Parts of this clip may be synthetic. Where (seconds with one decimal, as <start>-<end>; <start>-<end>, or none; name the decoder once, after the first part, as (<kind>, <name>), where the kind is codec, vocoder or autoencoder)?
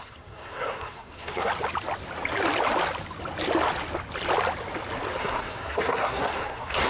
0.0-1.5 (codec, SNAC); 5.2-6.9